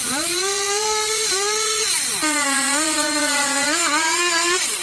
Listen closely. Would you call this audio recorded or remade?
remade